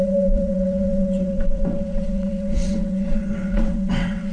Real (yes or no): no